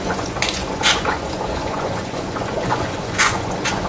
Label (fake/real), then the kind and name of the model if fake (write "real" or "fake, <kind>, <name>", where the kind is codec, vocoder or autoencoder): fake, vocoder, Vocos